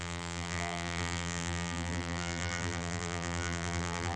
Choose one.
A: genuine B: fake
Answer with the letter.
B